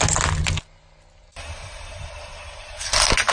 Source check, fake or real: real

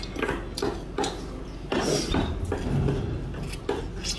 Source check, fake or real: real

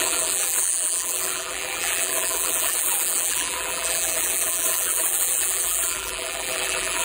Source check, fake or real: fake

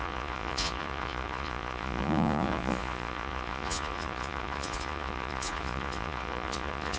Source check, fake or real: fake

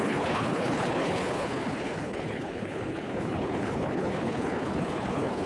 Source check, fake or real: fake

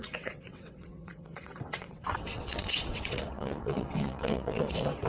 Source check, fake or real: fake